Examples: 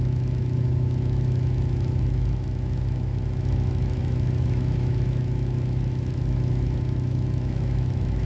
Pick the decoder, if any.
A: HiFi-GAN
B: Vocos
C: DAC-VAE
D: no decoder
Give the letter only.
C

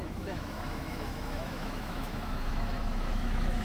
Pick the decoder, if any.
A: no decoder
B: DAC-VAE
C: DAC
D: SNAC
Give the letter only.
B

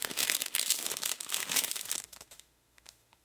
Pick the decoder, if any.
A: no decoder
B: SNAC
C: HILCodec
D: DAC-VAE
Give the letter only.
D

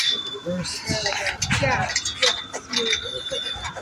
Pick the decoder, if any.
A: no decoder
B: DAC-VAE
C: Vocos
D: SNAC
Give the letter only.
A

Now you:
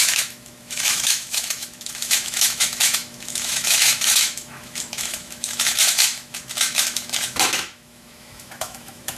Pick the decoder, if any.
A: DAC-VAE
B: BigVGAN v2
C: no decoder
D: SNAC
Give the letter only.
A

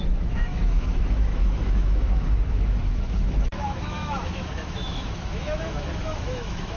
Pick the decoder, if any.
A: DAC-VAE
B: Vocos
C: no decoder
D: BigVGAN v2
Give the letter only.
A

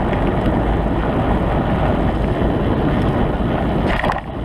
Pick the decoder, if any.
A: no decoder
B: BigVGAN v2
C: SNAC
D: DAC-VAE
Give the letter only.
A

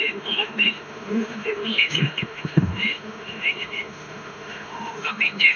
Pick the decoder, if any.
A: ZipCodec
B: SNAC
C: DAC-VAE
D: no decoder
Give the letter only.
C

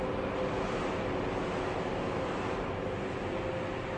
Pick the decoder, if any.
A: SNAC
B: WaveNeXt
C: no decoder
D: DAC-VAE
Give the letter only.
C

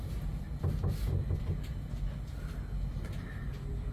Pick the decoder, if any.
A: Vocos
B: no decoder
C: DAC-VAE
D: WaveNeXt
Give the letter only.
B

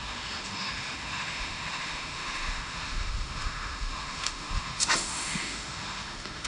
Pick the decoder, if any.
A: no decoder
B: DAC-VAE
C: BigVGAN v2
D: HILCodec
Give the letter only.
B